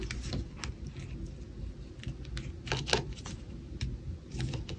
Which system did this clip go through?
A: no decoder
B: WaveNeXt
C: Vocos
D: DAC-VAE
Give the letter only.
A